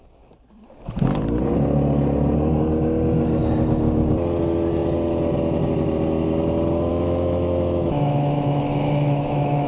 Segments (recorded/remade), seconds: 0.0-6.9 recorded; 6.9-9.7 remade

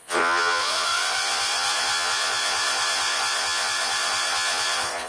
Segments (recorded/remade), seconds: 0.0-5.1 remade

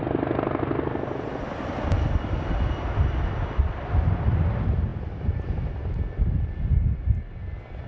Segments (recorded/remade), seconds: 0.0-7.9 recorded

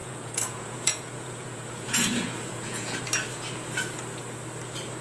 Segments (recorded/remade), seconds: 0.0-3.0 remade; 3.0-5.0 recorded

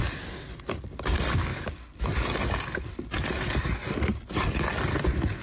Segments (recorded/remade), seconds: 0.0-5.4 recorded